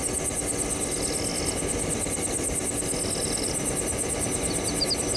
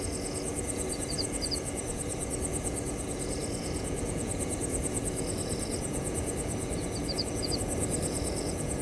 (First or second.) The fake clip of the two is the second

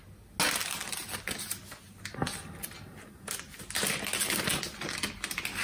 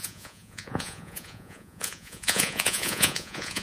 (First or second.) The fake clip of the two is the second